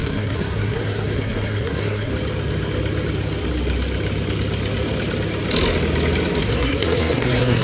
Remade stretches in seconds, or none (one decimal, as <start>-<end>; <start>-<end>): 0.0-2.1; 6.4-7.6